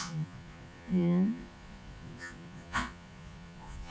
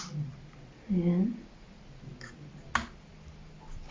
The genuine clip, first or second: second